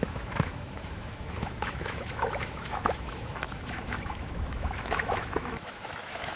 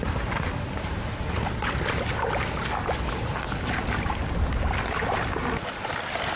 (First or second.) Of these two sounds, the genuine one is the second